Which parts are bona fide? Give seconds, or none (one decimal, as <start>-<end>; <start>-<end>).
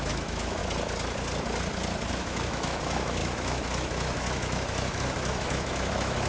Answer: 0.6-2.1